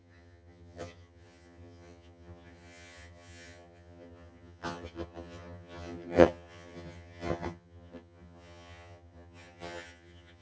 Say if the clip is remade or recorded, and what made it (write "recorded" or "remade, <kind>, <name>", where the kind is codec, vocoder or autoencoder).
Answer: remade, vocoder, HiFi-GAN